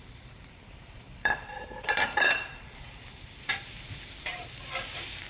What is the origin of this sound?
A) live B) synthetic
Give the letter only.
B